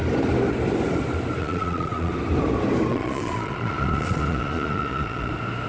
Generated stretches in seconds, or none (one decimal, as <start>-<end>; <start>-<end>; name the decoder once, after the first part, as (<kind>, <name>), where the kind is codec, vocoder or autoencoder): 1.4-2.1 (vocoder, Vocos); 2.9-5.3